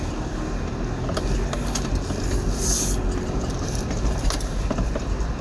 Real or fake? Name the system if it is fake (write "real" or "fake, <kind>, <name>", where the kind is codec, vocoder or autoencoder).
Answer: real